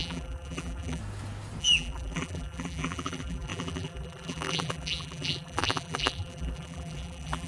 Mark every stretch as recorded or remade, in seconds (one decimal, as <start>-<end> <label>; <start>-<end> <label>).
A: 0.0-1.0 remade; 1.0-1.6 recorded; 1.6-7.5 remade